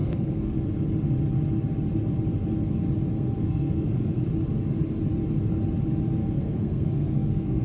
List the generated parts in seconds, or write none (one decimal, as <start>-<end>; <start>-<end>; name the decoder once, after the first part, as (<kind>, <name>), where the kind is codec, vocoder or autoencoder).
0.0-0.6 (codec, SNAC); 3.1-4.2; 6.2-7.6